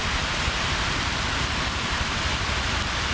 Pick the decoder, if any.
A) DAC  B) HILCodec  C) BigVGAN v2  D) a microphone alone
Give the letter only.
D